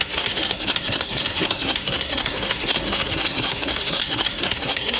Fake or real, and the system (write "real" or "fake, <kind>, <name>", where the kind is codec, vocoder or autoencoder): fake, codec, SNAC